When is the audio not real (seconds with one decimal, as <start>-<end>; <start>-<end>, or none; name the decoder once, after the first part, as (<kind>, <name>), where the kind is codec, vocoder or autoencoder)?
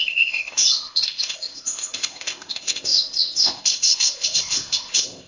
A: 0.0-5.3 (codec, ZipCodec)